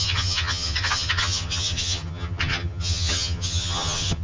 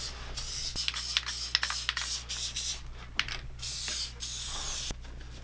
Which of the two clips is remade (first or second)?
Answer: first